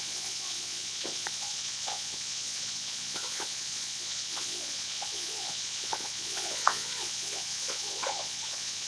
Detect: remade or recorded remade